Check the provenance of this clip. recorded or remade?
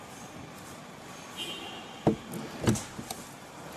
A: recorded